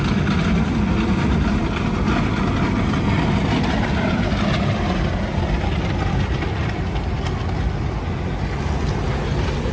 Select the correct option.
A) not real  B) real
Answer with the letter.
B